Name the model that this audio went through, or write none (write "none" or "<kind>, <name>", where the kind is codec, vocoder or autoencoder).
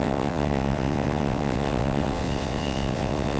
vocoder, WaveNeXt